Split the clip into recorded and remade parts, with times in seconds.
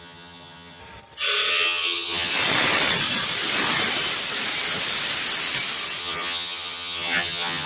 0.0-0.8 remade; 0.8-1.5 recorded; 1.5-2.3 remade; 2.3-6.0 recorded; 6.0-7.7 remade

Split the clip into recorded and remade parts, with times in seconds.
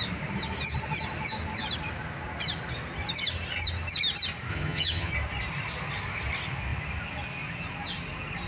0.0-4.5 recorded; 4.5-5.1 remade; 5.1-8.5 recorded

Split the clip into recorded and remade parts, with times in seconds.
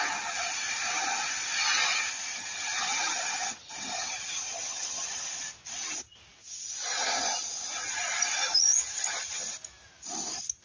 0.0-2.3 recorded; 2.3-5.1 remade; 5.1-10.6 recorded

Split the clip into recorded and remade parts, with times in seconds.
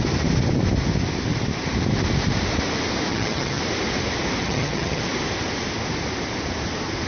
0.0-3.1 recorded; 3.1-3.6 remade; 3.6-4.4 recorded; 4.4-5.0 remade; 5.0-7.1 recorded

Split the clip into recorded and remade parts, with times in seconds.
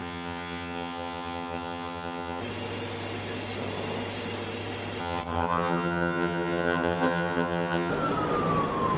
0.0-2.4 remade; 2.4-5.0 recorded; 5.0-7.9 remade; 7.9-9.0 recorded